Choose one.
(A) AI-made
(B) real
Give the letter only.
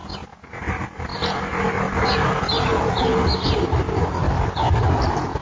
B